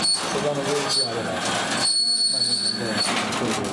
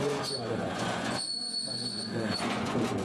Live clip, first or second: first